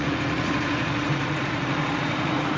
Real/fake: fake